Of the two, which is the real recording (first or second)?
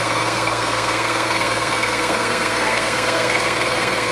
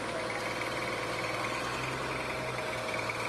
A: second